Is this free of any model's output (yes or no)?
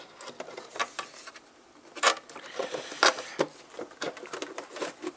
yes